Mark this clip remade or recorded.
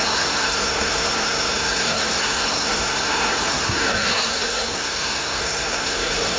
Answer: remade